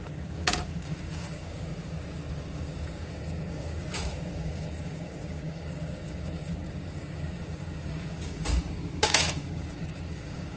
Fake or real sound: fake